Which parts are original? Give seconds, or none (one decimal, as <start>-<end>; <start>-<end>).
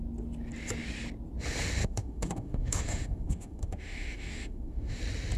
0.0-1.8; 5.0-5.4